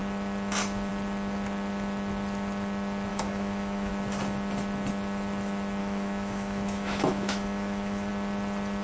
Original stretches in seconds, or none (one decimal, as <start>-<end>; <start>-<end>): 0.0-3.1; 3.9-5.8; 8.1-8.8